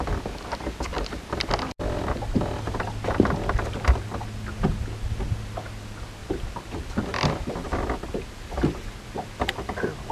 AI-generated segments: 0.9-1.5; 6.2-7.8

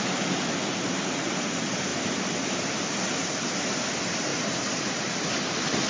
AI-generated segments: 1.9-3.8; 4.3-5.0

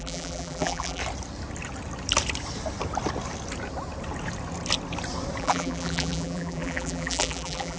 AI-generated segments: 0.0-1.0; 5.4-7.8

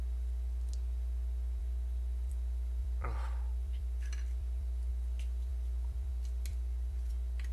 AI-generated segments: 2.8-4.9; 5.5-6.1; 6.5-7.1